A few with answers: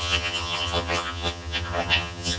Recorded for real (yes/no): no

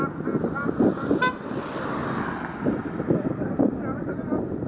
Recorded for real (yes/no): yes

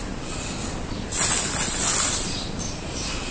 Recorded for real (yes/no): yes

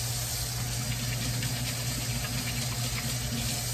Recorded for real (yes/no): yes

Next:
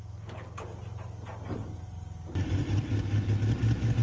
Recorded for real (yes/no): yes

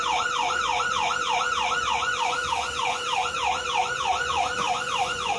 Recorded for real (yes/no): no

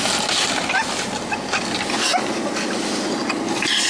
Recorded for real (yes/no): yes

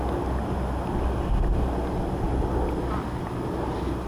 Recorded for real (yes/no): yes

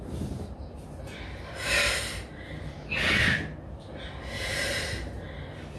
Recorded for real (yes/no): yes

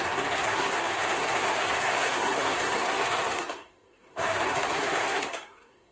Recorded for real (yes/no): no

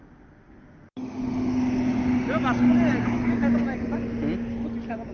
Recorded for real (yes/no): yes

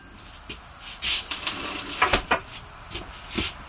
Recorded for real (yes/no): yes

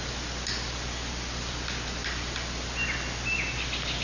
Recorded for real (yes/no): yes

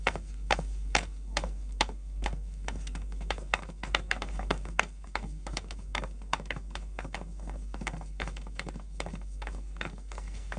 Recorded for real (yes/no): no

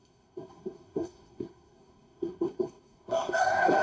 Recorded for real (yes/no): no